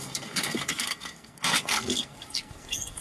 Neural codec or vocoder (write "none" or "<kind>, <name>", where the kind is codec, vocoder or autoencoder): codec, SNAC